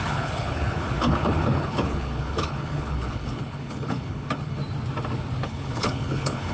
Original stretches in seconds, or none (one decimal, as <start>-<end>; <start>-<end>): 4.6-5.4